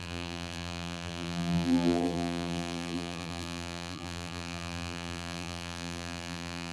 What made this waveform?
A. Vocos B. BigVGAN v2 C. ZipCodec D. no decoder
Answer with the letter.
B